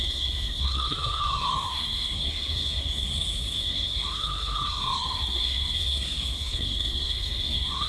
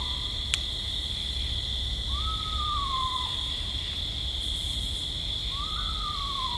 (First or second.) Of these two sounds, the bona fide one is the second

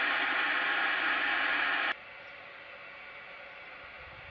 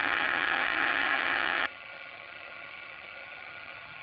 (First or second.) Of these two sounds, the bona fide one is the first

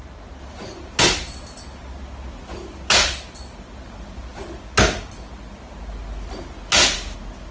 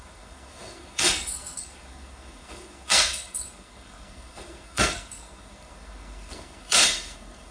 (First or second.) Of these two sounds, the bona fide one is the first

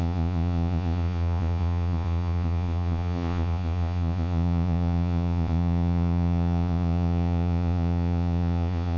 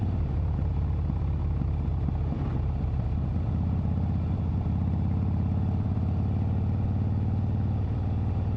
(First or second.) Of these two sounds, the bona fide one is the second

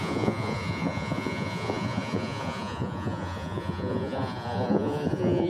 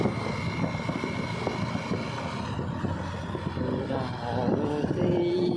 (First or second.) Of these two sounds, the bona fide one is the second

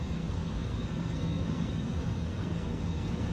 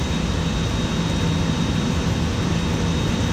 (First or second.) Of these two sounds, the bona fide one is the second